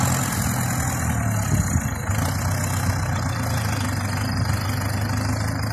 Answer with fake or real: real